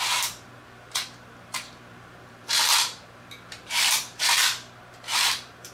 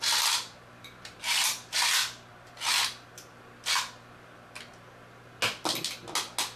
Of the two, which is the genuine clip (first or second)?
second